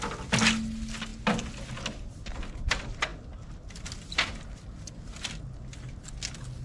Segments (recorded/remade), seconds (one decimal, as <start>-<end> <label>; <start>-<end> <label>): 0.0-6.6 recorded